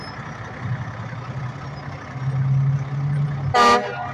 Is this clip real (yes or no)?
yes